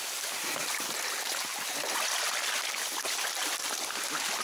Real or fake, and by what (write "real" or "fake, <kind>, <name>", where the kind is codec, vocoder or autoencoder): real